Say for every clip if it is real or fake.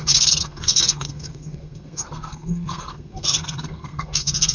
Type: fake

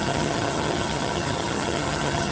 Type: fake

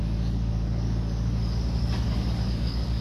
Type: fake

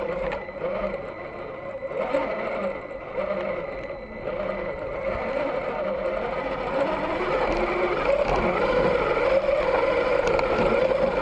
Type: real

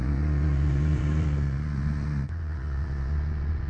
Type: fake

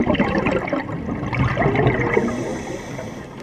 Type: real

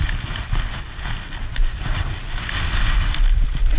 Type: real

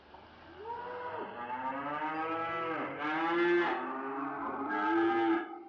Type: real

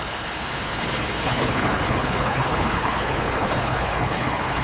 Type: fake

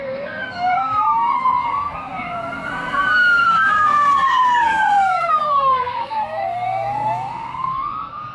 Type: fake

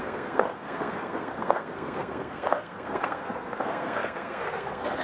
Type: fake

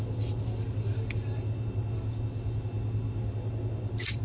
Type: real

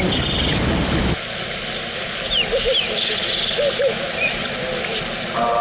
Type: real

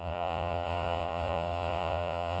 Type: fake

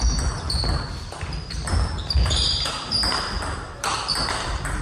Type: fake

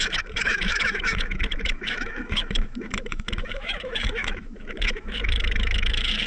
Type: fake